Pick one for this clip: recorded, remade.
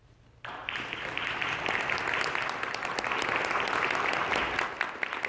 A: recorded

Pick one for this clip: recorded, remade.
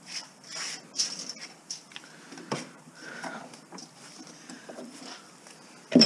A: remade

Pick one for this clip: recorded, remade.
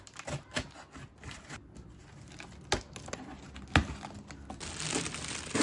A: recorded